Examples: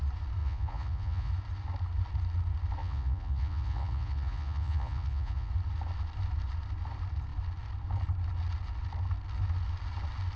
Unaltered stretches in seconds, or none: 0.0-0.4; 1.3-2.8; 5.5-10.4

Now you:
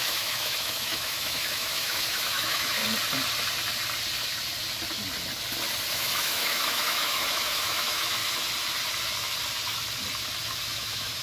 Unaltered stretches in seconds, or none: 2.8-5.9; 8.2-10.7

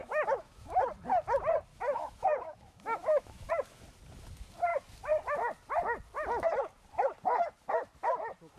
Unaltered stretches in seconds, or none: 0.8-1.7; 3.5-8.6